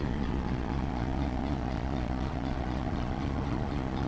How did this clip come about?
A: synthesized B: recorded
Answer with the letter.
A